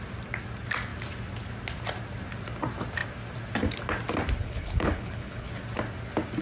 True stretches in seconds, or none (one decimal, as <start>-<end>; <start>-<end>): 0.0-4.4; 5.5-6.4